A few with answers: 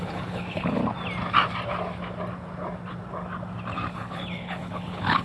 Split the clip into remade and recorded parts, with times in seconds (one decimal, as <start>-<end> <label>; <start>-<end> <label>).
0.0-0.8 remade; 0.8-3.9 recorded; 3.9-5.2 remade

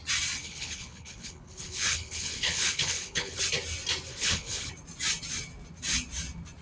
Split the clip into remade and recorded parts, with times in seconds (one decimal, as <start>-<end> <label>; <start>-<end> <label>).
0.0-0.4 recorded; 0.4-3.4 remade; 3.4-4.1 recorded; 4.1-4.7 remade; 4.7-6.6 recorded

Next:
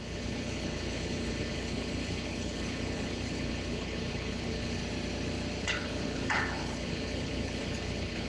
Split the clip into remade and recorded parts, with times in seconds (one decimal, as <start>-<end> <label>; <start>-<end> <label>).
0.0-4.8 remade; 4.8-5.6 recorded; 5.6-8.3 remade

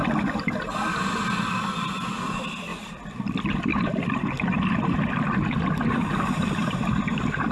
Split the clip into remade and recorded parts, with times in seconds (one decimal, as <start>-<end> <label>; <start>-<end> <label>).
0.0-7.5 recorded